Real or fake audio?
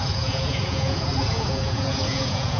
fake